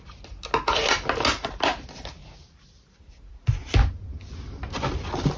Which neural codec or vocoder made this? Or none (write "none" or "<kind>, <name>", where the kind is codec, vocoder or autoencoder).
none